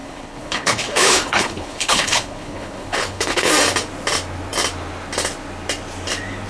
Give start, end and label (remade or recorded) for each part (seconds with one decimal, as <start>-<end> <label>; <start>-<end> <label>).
0.0-3.5 remade; 3.5-6.5 recorded